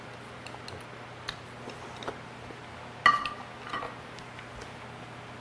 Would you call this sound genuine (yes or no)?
yes